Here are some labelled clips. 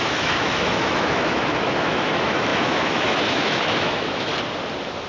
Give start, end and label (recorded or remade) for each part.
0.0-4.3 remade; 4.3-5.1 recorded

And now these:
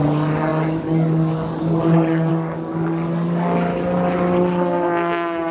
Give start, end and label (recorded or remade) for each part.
0.0-3.7 remade; 3.7-5.5 recorded

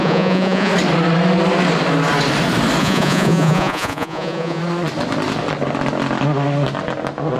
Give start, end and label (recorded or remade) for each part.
0.0-0.7 remade; 0.7-2.8 recorded; 2.8-4.6 remade; 4.6-7.4 recorded

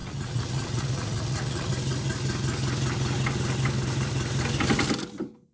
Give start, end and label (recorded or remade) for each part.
0.0-1.7 remade; 1.7-5.5 recorded

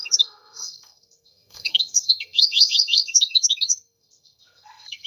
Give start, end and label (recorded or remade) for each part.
0.0-5.1 remade